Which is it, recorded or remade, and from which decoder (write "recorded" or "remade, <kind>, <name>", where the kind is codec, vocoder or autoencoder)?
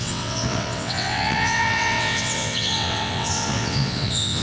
remade, vocoder, WaveNeXt